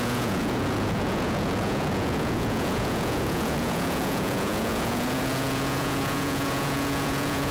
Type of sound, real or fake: fake